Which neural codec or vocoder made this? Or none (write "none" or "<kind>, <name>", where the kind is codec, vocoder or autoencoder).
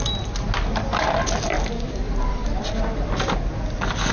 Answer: none